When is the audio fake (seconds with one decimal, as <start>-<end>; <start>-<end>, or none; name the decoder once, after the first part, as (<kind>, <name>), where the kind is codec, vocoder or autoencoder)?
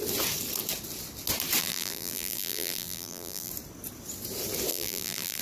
1.6-3.5 (vocoder, BigVGAN v2); 4.7-5.4